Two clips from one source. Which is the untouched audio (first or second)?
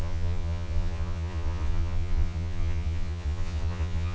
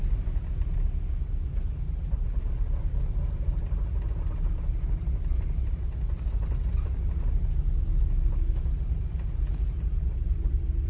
second